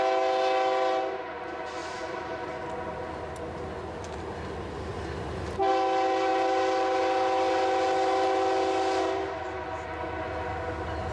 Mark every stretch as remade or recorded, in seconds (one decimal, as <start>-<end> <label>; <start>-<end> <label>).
0.0-1.8 recorded; 1.8-2.4 remade; 2.4-4.9 recorded; 4.9-5.7 remade; 5.7-11.1 recorded